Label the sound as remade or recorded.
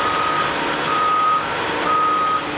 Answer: recorded